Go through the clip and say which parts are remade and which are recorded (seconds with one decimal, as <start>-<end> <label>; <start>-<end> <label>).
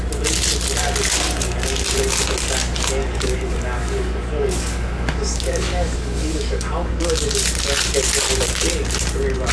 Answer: 0.0-3.0 recorded; 3.0-7.1 remade; 7.1-9.5 recorded